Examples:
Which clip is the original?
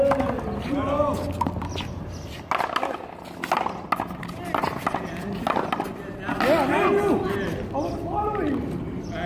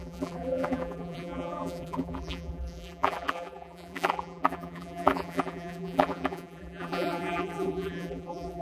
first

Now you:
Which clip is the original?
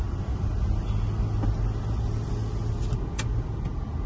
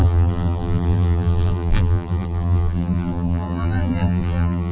first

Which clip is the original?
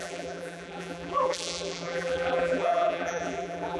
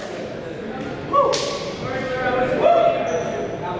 second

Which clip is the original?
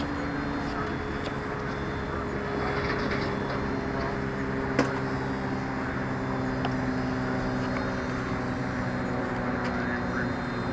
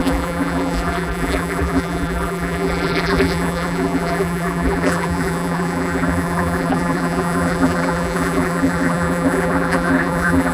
first